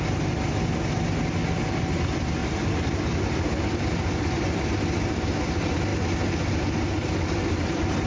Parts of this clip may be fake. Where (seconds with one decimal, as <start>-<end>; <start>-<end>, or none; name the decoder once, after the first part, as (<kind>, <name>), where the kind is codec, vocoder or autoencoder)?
none